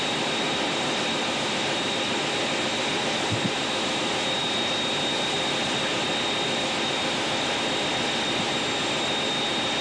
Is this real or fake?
real